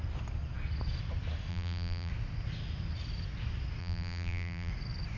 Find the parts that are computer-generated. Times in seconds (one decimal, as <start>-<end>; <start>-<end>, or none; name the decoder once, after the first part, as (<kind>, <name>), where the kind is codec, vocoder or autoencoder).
1.5-2.1 (vocoder, BigVGAN v2); 3.8-4.7